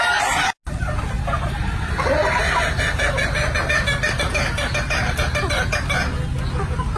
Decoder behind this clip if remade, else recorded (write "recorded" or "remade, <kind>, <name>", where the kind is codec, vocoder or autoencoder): recorded